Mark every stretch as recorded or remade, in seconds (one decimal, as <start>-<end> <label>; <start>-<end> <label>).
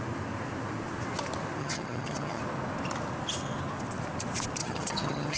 0.0-1.6 recorded; 1.6-2.4 remade; 2.4-4.6 recorded; 4.6-5.4 remade